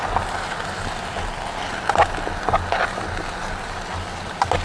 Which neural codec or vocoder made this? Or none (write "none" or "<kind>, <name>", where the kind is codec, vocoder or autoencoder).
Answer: none